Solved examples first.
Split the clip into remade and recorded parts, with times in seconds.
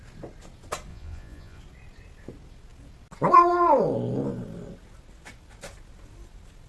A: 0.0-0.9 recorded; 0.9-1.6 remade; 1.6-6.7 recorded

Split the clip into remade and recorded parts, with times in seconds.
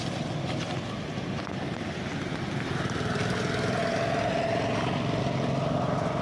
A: 0.0-6.2 recorded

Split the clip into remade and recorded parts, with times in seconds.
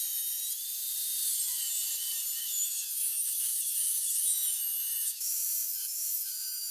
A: 0.0-2.4 recorded; 2.4-6.7 remade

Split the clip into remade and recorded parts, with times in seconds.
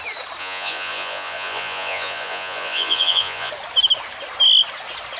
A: 0.0-0.4 recorded; 0.4-3.5 remade; 3.5-5.2 recorded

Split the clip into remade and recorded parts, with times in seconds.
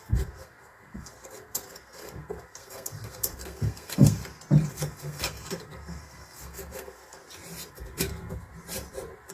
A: 0.0-4.2 remade; 4.2-4.7 recorded; 4.7-7.2 remade; 7.2-7.7 recorded; 7.7-8.5 remade; 8.5-9.3 recorded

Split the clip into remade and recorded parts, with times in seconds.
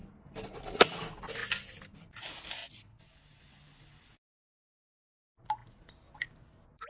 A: 0.0-6.9 recorded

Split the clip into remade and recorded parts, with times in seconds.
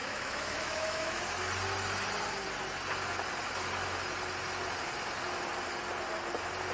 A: 0.0-1.2 remade; 1.2-6.7 recorded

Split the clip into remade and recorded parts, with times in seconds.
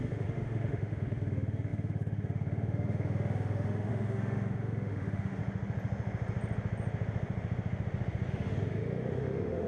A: 0.0-5.4 remade; 5.4-8.3 recorded; 8.3-9.7 remade